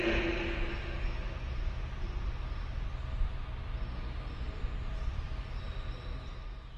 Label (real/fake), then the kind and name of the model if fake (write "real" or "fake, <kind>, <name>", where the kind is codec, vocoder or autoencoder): real